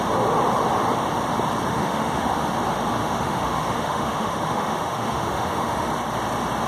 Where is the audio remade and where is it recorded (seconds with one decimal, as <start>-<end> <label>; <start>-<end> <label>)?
0.0-1.7 recorded; 1.7-2.5 remade; 2.5-3.0 recorded; 3.0-5.9 remade; 5.9-6.7 recorded